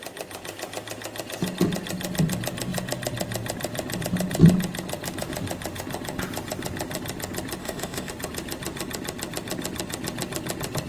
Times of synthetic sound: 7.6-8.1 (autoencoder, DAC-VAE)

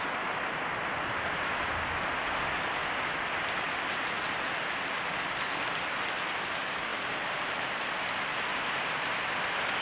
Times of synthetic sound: 6.9-7.7 (vocoder, BigVGAN v2); 8.5-9.2

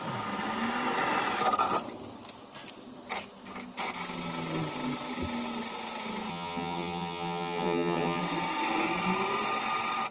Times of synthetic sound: 6.3-8.2 (vocoder, HiFi-GAN)

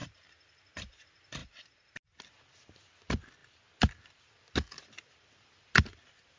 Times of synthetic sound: none

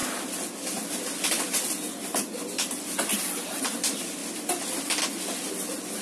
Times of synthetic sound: 0.0-4.2 (vocoder, BigVGAN v2); 5.1-6.0

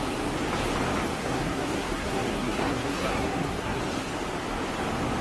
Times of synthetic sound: 1.2-3.8 (codec, SNAC)